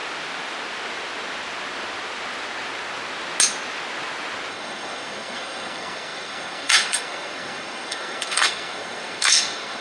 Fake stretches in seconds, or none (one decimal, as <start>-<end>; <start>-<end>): 4.5-9.8